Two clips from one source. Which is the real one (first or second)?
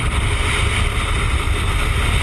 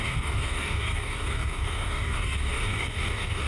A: first